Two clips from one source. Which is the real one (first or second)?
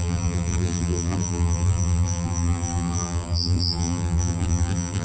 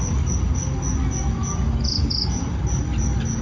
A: second